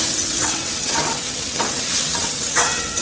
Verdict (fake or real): fake